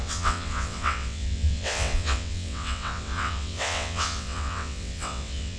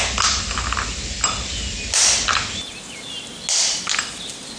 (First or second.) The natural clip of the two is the second